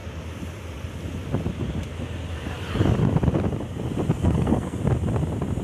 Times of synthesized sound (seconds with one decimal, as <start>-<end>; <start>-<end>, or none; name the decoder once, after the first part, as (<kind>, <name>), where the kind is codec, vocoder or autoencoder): 4.1-4.8 (codec, SNAC)